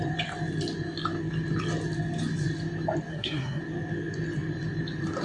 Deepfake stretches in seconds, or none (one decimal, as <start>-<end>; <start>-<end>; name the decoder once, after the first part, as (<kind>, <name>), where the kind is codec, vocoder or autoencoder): 3.1-3.6 (codec, SNAC)